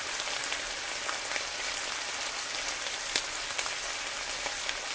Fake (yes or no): no